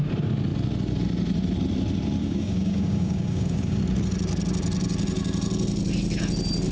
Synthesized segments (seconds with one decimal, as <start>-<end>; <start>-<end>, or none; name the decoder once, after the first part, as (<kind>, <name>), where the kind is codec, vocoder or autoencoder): 2.2-3.8 (codec, DAC)